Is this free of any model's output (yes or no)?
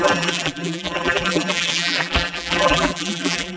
no